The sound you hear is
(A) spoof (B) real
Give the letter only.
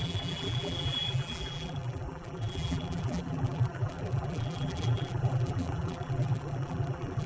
A